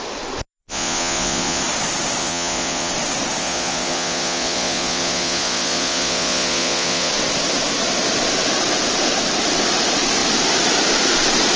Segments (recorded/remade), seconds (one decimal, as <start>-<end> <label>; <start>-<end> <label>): 0.0-0.6 recorded; 0.6-1.6 remade; 1.6-2.2 recorded; 2.2-2.9 remade; 2.9-3.4 recorded; 3.4-7.1 remade; 7.1-11.6 recorded